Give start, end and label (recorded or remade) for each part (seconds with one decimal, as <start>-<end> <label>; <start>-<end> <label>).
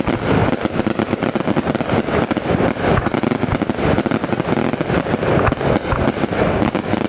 0.0-0.4 recorded; 0.4-3.4 remade; 3.4-7.1 recorded